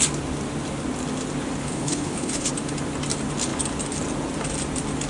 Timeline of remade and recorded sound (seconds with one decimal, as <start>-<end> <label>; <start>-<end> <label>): 0.0-1.6 recorded; 1.6-2.5 remade; 2.5-5.1 recorded